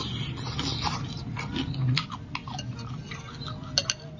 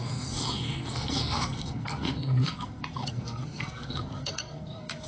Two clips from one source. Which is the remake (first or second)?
second